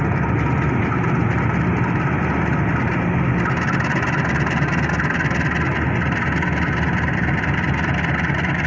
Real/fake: real